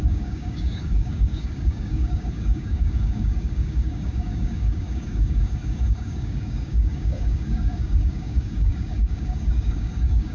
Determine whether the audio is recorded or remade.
remade